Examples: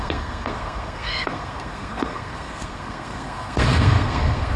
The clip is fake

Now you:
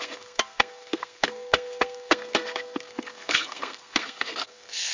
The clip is fake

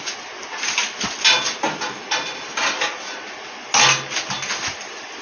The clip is real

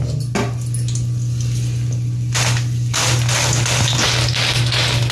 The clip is real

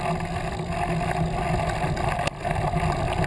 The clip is real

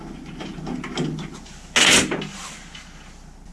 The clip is real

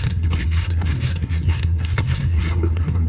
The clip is fake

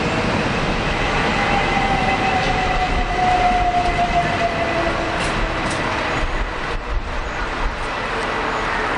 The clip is real